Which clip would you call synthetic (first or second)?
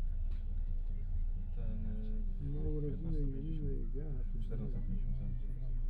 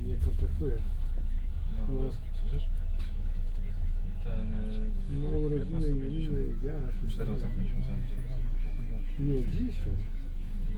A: second